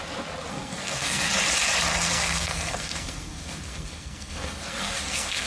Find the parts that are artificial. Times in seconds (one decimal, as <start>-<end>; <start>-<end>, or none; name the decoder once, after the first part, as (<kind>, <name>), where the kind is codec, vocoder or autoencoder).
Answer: 0.5-1.3 (codec, SNAC); 1.9-5.5